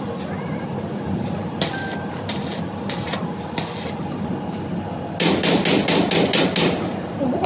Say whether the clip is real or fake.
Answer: real